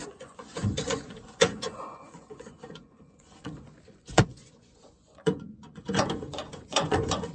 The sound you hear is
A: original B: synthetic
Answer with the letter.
B